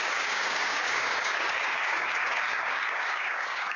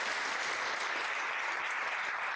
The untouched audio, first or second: second